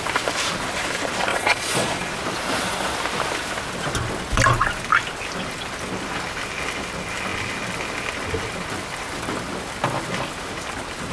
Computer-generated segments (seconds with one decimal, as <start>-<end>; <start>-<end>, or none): 1.3-2.1